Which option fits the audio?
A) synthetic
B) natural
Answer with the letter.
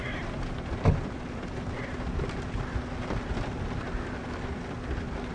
B